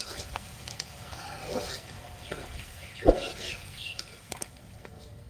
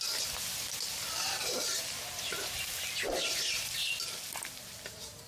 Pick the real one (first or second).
second